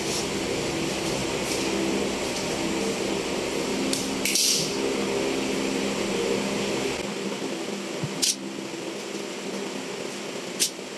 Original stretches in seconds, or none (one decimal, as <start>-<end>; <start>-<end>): 0.0-11.0